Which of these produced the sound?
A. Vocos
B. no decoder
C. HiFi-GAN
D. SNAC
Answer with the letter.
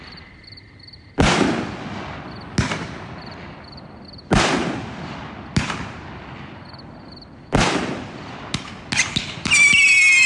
B